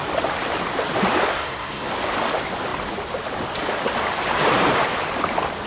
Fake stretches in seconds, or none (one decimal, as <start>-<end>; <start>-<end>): 1.3-1.9